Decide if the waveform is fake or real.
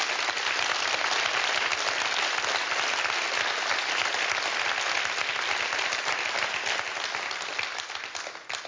real